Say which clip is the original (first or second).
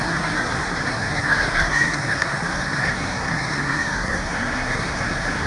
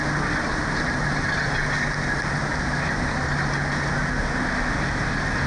second